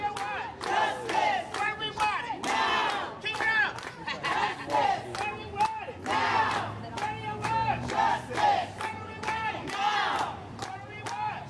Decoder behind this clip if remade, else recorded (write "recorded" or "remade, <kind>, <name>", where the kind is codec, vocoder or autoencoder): recorded